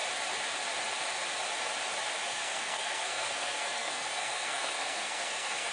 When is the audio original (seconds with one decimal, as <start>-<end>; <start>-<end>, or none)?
0.0-2.3